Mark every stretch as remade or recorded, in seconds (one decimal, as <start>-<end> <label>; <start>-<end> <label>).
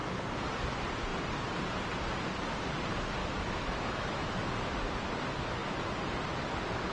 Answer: 0.0-3.2 recorded; 3.2-5.1 remade; 5.1-6.9 recorded